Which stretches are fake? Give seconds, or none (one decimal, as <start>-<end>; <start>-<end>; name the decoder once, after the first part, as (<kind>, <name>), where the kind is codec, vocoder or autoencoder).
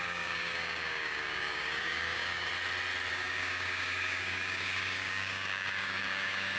0.0-2.5 (codec, DAC); 3.1-6.6